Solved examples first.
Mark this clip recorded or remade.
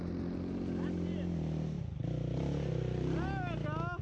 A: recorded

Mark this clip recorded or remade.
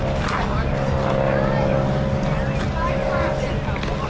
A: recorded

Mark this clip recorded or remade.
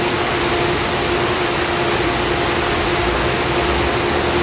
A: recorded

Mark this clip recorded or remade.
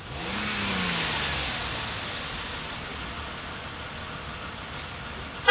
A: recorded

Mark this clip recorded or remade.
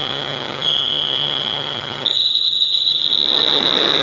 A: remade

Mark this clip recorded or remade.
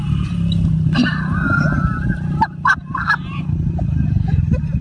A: recorded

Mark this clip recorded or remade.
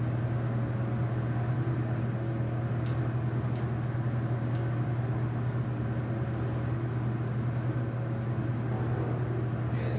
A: recorded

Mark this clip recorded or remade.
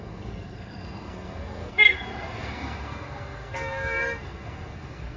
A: remade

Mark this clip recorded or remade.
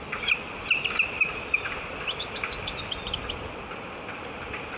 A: remade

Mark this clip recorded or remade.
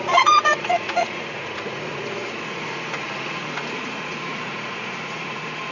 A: remade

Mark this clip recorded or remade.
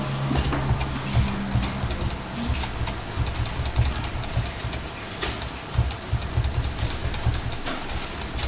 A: recorded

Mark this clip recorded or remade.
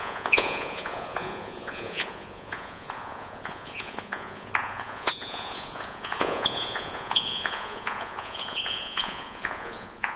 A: remade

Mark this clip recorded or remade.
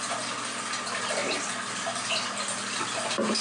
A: recorded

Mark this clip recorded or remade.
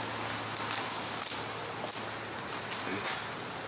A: recorded